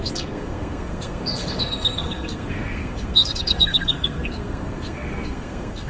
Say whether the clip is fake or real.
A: fake